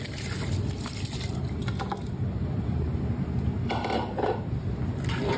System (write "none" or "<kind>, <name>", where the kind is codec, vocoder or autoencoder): none